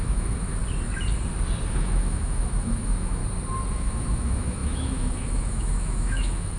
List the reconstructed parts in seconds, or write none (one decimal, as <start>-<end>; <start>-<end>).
0.0-0.6; 1.7-3.2; 3.7-6.6